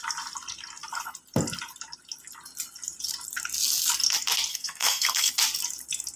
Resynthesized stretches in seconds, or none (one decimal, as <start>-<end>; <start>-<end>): 4.5-5.3